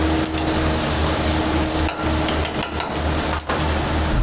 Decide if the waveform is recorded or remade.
recorded